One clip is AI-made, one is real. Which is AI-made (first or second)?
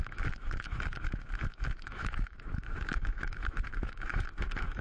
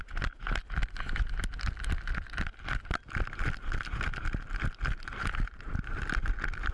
first